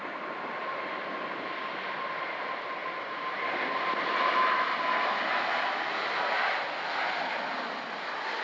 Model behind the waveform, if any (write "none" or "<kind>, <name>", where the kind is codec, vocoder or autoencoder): none